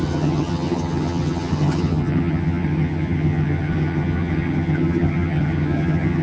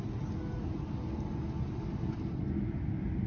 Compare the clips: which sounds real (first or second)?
second